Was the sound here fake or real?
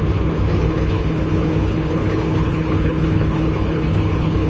fake